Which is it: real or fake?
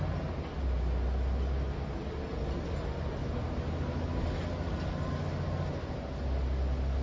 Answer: real